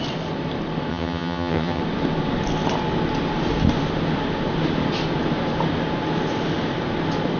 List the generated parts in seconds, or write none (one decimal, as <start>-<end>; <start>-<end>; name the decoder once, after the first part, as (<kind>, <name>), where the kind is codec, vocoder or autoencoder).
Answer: 0.9-1.8 (vocoder, HiFi-GAN)